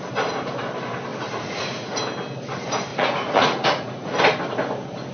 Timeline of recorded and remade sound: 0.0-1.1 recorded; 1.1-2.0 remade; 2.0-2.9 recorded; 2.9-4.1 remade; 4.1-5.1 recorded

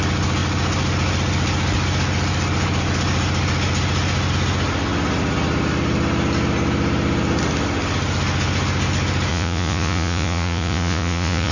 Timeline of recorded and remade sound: 0.0-9.3 recorded; 9.3-11.5 remade

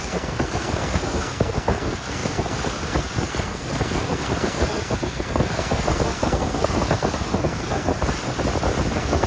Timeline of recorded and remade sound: 0.0-7.9 remade; 7.9-8.9 recorded; 8.9-9.3 remade

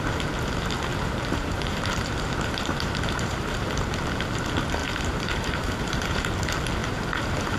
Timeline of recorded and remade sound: 0.0-0.9 recorded; 0.9-3.7 remade; 3.7-4.8 recorded; 4.8-6.2 remade; 6.2-6.8 recorded; 6.8-7.6 remade

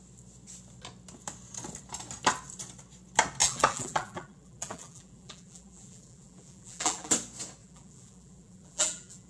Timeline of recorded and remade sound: 0.0-3.4 recorded; 3.4-7.1 remade; 7.1-7.6 recorded; 7.6-9.3 remade

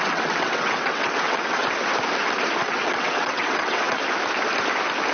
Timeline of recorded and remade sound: 0.0-1.6 remade; 1.6-2.6 recorded; 2.6-4.0 remade; 4.0-5.1 recorded